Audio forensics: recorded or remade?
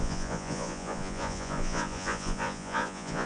remade